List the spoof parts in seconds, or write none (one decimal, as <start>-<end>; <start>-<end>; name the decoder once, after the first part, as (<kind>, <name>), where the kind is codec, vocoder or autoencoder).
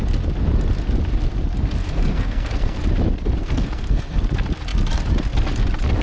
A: 1.8-2.8 (codec, SNAC); 3.4-4.2